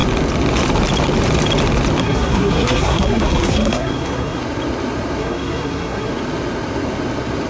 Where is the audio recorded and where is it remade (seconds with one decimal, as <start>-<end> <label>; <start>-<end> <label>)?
0.0-2.0 recorded; 2.0-4.4 remade; 4.4-5.2 recorded; 5.2-6.1 remade; 6.1-7.5 recorded